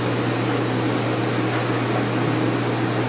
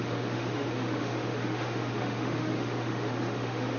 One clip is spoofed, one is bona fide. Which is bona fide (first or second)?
first